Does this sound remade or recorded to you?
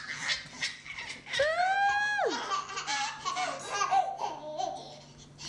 recorded